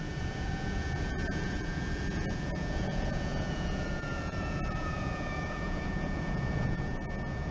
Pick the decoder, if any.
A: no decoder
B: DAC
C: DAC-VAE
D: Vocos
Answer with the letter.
D